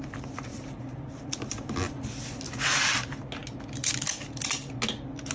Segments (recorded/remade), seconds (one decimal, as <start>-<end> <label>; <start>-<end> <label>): 0.0-5.3 recorded